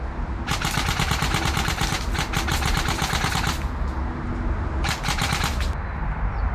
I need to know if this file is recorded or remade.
recorded